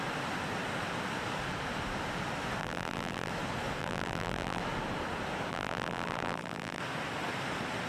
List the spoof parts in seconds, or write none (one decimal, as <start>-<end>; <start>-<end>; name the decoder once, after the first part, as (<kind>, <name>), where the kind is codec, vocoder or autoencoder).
2.6-3.3 (vocoder, BigVGAN v2); 3.8-4.6; 5.5-6.8